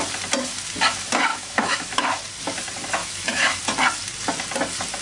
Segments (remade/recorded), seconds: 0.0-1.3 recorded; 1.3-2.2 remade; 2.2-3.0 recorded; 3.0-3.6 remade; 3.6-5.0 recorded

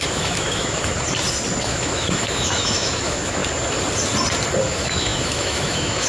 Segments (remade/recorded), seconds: 0.0-0.9 remade; 0.9-1.6 recorded; 1.6-3.4 remade; 3.4-4.6 recorded; 4.6-6.1 remade

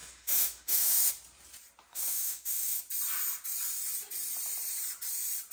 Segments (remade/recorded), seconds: 0.0-1.1 remade; 1.1-1.9 recorded; 1.9-2.8 remade; 2.8-5.5 recorded